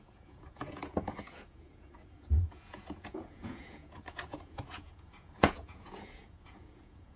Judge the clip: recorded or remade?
remade